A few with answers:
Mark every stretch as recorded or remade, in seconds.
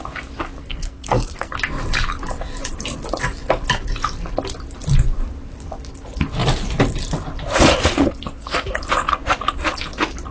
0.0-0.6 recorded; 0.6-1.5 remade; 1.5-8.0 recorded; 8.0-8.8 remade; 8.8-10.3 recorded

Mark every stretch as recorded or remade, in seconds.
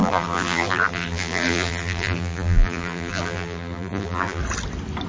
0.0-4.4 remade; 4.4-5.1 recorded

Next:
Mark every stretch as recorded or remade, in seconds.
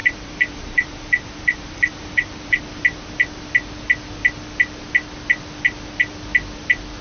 0.0-2.6 remade; 2.6-7.0 recorded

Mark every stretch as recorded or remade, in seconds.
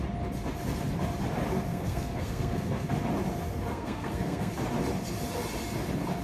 0.0-1.7 recorded; 1.7-2.9 remade; 2.9-3.7 recorded; 3.7-4.5 remade; 4.5-6.2 recorded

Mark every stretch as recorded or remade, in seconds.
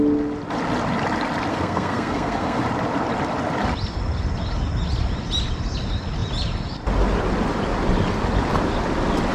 0.0-1.5 recorded; 1.5-2.6 remade; 2.6-9.3 recorded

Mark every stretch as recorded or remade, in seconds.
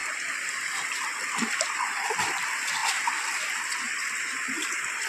0.0-2.4 remade; 2.4-5.1 recorded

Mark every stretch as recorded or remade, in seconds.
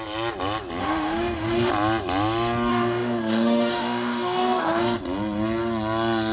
0.0-0.8 recorded; 0.8-1.7 remade; 1.7-2.7 recorded; 2.7-5.0 remade; 5.0-6.3 recorded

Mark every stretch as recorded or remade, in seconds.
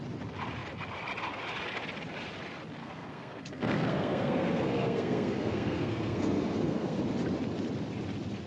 0.0-2.8 recorded; 2.8-7.0 remade; 7.0-8.5 recorded